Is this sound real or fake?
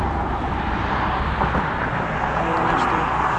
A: real